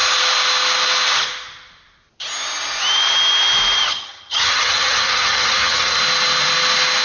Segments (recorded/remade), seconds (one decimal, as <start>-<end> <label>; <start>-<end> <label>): 0.0-3.9 recorded; 3.9-6.0 remade; 6.0-7.0 recorded